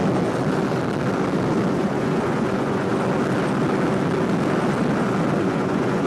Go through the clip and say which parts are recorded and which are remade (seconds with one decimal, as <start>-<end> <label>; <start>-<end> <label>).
0.0-1.7 recorded; 1.7-2.9 remade; 2.9-5.4 recorded; 5.4-6.1 remade